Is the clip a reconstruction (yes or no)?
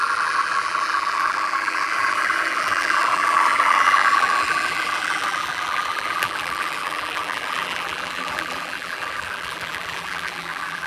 yes